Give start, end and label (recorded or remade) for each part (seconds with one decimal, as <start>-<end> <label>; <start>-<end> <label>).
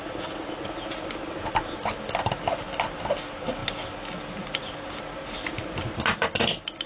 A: 0.0-6.9 recorded